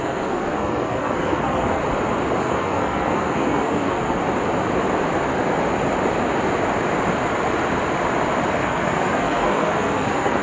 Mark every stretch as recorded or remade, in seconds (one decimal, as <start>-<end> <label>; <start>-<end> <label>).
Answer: 0.0-1.8 remade; 1.8-2.4 recorded; 2.4-4.2 remade; 4.2-8.5 recorded; 8.5-10.4 remade